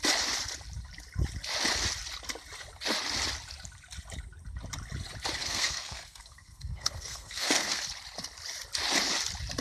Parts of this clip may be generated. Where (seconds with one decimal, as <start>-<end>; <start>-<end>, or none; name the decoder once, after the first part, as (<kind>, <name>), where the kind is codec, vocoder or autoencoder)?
5.4-7.8 (codec, SNAC)